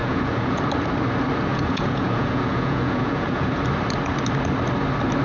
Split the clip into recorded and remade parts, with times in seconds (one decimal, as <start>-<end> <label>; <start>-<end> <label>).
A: 0.0-0.6 remade; 0.6-1.5 recorded; 1.5-3.6 remade; 3.6-5.2 recorded